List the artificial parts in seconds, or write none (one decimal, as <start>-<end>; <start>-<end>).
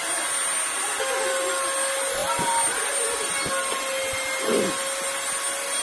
none